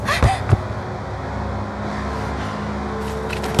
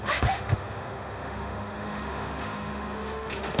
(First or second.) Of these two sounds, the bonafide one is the first